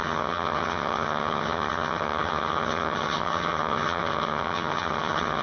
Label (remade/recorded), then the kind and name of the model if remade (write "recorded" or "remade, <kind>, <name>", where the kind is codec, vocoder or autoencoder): remade, vocoder, HiFi-GAN